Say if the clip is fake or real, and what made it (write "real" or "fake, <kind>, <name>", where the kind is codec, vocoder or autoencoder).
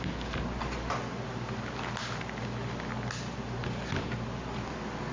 real